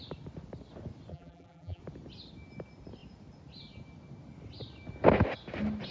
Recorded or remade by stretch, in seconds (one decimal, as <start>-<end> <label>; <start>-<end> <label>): 0.0-1.1 recorded; 1.1-1.8 remade; 1.8-5.9 recorded